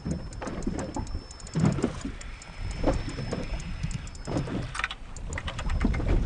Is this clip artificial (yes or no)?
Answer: no